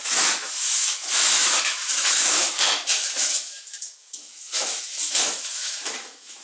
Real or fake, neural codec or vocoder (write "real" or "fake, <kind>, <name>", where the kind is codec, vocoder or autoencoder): fake, autoencoder, DAC-VAE